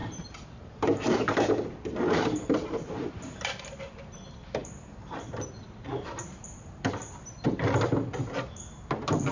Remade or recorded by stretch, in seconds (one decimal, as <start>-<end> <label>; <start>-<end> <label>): 0.0-3.1 remade; 3.1-4.6 recorded; 4.6-5.9 remade; 5.9-9.3 recorded